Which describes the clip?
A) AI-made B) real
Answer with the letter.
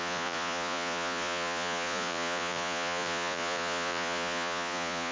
A